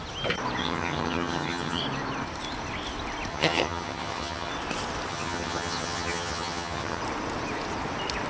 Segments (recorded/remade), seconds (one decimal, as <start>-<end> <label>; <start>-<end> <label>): 0.0-0.6 recorded; 0.6-1.8 remade; 1.8-3.3 recorded; 3.3-4.5 remade; 4.5-5.1 recorded; 5.1-7.0 remade; 7.0-8.3 recorded